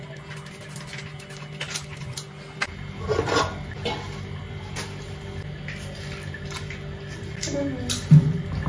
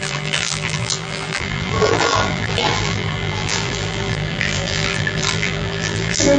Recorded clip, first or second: first